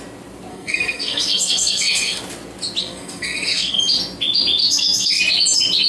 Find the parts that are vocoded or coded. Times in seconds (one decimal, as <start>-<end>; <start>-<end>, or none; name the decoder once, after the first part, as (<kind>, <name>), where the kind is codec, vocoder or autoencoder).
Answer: 0.5-2.2 (codec, SNAC); 2.8-3.8; 4.6-5.2